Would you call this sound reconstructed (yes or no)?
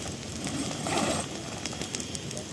no